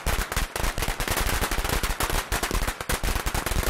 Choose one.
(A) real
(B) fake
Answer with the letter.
A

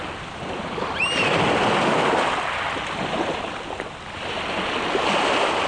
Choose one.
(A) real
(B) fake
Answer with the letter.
A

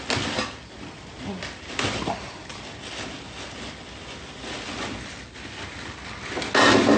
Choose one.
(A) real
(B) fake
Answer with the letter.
A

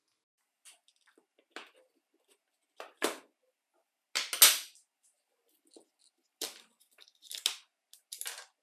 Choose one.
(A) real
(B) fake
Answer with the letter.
A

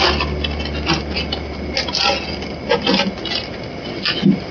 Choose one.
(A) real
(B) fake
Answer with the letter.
A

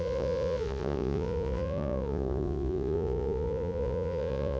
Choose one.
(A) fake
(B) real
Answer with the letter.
A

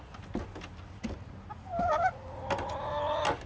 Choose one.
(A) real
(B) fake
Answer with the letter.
A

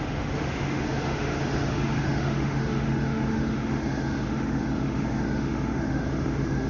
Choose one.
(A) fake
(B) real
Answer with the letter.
A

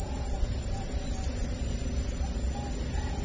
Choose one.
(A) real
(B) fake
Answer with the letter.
A